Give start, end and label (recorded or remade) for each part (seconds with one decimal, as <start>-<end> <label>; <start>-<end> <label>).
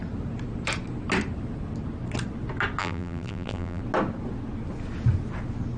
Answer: 0.0-2.8 recorded; 2.8-3.8 remade; 3.8-5.8 recorded